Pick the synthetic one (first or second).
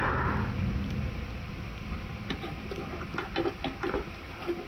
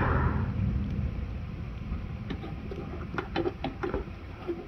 second